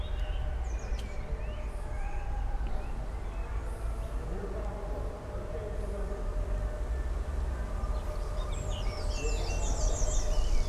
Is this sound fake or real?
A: real